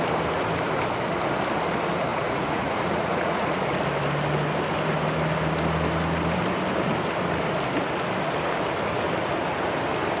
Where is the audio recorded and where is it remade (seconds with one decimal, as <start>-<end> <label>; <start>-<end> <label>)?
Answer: 0.0-2.1 recorded; 2.1-3.6 remade; 3.6-10.2 recorded